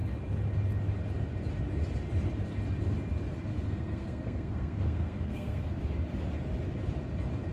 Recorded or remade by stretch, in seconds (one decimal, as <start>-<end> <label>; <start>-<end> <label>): 0.0-3.5 recorded; 3.5-5.7 remade; 5.7-7.5 recorded